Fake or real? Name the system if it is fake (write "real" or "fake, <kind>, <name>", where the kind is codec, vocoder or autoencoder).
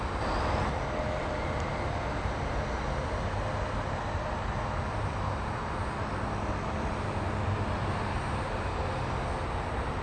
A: real